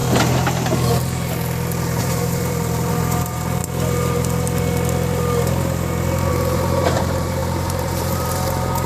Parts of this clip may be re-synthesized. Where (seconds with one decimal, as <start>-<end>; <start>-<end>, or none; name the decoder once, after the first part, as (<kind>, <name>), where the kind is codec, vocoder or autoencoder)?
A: 2.0-3.6 (vocoder, BigVGAN v2); 6.3-8.9